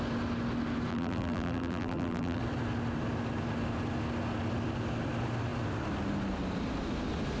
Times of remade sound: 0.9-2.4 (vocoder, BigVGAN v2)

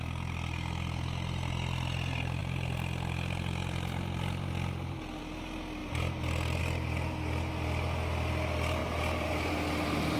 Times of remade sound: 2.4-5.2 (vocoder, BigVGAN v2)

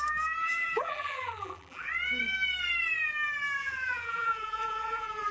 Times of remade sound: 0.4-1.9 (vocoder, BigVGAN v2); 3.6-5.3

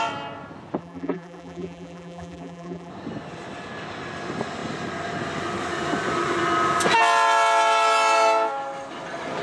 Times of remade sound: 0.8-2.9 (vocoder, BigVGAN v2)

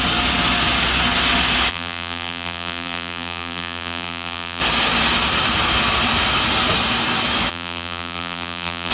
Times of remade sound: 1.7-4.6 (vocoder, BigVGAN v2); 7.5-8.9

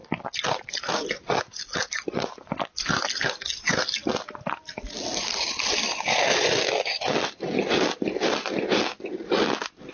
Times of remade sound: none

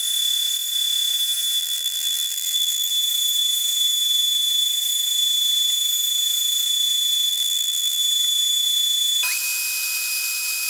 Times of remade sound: 1.6-2.9 (vocoder, BigVGAN v2); 7.3-8.0